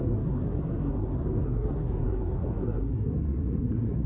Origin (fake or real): fake